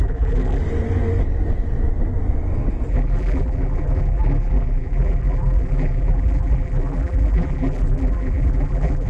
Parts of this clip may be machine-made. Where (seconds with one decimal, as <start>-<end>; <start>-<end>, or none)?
0.0-0.6; 2.9-9.1